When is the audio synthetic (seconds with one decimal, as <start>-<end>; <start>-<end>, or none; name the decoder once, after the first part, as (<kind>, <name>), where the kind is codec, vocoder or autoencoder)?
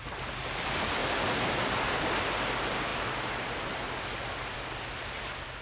none